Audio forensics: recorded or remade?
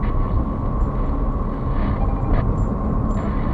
recorded